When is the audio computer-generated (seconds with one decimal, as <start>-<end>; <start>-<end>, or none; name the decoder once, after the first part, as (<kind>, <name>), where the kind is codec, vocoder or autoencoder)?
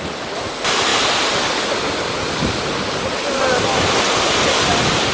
none